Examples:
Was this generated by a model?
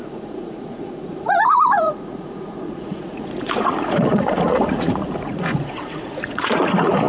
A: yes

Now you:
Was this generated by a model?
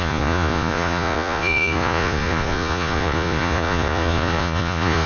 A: yes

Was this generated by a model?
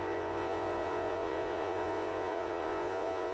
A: yes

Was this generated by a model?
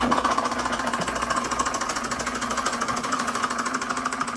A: yes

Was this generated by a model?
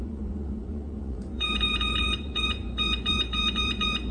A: yes